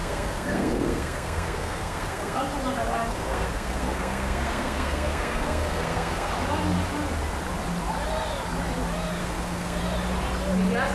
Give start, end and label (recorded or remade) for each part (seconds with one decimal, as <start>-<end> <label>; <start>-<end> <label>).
0.0-2.4 remade; 2.4-3.1 recorded; 3.1-6.3 remade; 6.3-9.2 recorded; 9.2-9.8 remade; 9.8-10.9 recorded